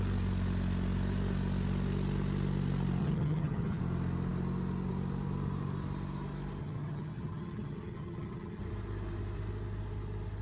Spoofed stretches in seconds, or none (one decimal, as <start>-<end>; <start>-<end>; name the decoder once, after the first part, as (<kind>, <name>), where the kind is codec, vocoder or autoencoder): 3.0-3.8 (vocoder, HiFi-GAN); 6.6-8.6

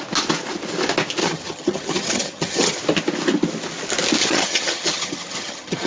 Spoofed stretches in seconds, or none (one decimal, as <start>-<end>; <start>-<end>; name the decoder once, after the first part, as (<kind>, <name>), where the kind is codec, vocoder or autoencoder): 1.2-2.8 (vocoder, HiFi-GAN); 4.2-5.9

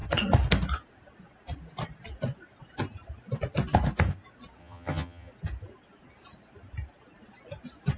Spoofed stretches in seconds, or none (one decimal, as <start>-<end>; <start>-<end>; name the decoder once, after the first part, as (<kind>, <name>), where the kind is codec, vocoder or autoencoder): 4.6-5.3 (vocoder, HiFi-GAN)